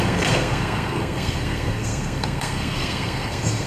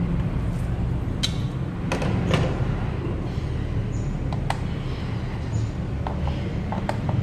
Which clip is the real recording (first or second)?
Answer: second